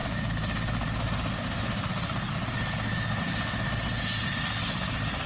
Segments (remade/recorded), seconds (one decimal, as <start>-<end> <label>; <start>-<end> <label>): 0.0-5.3 recorded